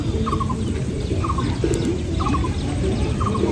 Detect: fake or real real